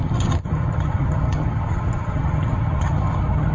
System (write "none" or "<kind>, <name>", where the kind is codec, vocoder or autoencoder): vocoder, HiFi-GAN